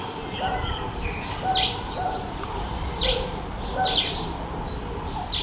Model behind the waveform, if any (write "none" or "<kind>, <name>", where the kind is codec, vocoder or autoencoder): none